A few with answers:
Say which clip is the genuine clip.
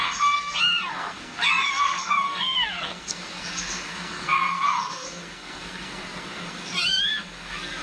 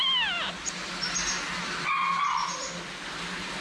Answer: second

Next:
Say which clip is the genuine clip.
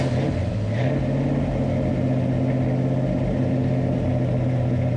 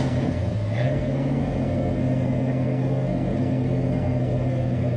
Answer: first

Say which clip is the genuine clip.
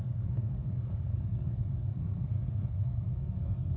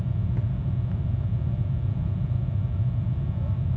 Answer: second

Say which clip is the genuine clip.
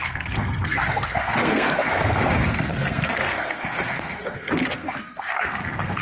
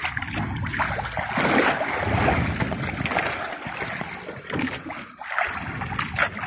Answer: second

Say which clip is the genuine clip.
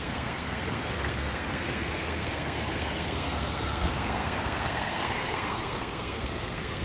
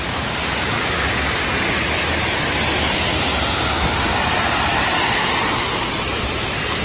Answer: second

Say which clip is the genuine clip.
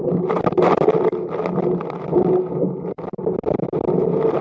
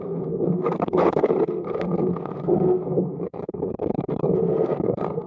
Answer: first